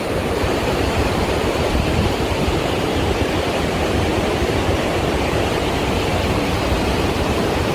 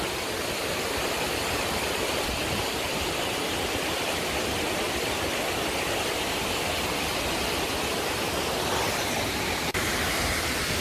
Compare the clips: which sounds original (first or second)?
second